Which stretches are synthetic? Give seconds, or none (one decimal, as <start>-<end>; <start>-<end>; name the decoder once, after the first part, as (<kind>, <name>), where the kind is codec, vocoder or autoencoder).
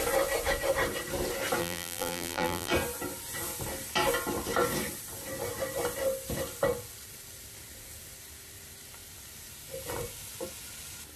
1.6-2.7 (vocoder, BigVGAN v2)